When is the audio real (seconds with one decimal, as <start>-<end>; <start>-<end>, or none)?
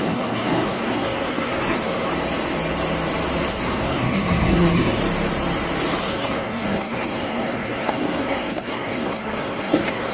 2.1-3.5; 5.0-6.0